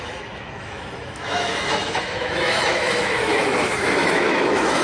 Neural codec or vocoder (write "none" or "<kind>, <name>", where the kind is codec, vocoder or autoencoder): autoencoder, DAC-VAE